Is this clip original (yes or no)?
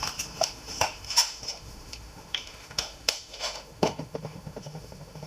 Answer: no